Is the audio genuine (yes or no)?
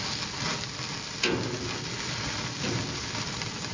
yes